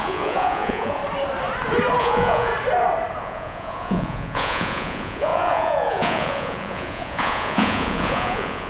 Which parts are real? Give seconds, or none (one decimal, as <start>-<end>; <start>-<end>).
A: 1.0-2.0; 2.5-3.2